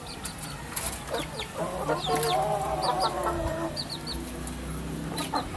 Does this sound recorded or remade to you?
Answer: recorded